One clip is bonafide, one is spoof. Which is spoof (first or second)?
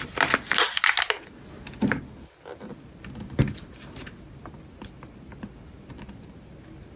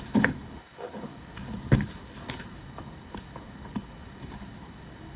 second